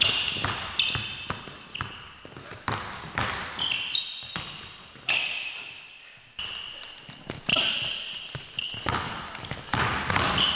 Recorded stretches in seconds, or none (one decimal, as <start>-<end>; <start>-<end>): 0.0-10.6